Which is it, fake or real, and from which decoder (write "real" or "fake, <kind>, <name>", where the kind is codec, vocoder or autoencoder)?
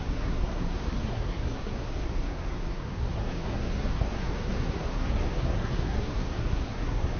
fake, codec, SNAC